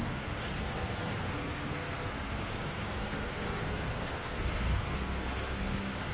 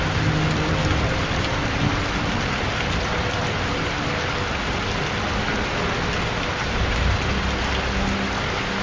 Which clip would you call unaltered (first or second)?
second